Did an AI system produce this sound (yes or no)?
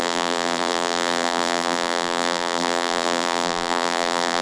yes